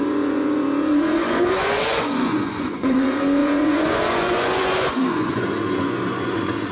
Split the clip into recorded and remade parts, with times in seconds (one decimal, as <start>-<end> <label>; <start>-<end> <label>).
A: 0.0-6.7 remade